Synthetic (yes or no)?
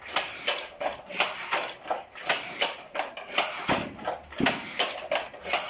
no